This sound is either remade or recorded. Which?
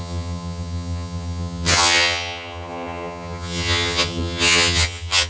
remade